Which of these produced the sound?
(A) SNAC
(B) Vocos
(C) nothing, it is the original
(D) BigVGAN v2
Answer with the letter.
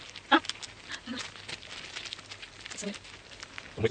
C